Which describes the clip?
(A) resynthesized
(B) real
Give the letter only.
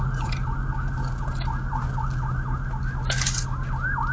B